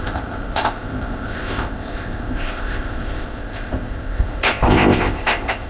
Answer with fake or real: fake